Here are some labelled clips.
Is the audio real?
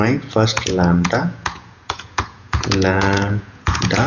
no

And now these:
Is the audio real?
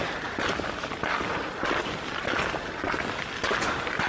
yes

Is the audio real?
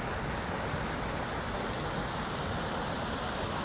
yes